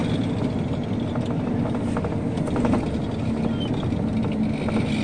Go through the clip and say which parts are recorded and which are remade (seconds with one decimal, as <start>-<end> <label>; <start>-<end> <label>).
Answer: 0.0-5.0 recorded